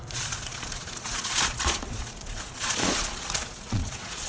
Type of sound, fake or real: fake